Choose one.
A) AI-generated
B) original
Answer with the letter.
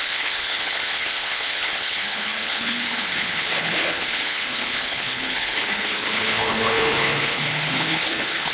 A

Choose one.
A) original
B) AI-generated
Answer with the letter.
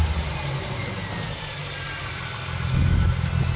A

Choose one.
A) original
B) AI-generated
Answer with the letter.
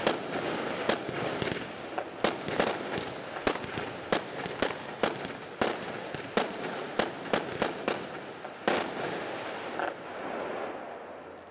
A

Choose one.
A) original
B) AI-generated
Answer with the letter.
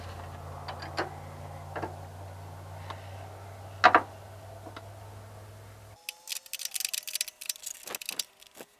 A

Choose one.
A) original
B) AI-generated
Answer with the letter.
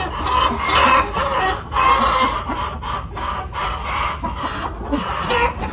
A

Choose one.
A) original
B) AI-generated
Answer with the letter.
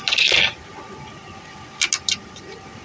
A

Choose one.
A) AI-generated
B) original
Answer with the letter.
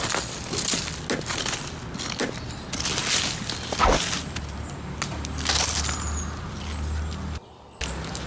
B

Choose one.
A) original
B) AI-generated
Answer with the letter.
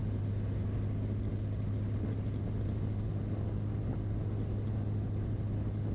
A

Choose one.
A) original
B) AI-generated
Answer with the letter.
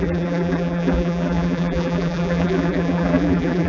B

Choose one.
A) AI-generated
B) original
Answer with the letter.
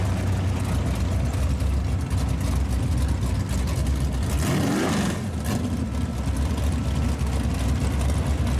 B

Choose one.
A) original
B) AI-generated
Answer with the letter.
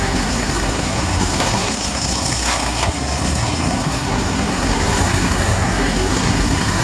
B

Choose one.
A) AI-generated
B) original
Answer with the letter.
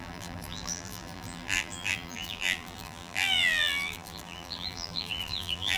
A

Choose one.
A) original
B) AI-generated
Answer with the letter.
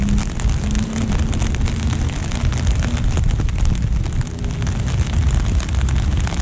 A